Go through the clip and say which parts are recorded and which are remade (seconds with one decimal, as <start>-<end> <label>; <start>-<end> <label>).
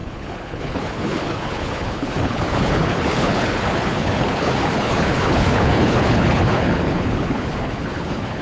0.0-8.4 remade